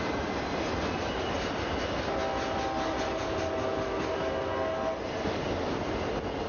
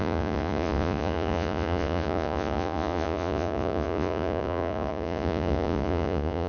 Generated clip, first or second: second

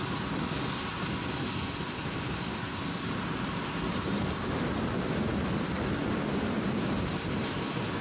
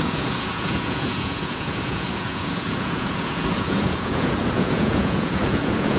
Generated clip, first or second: second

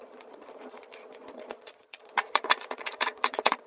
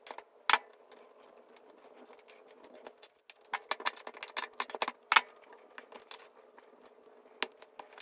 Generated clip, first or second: first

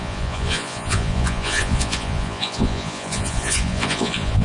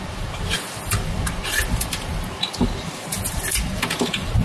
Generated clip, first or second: first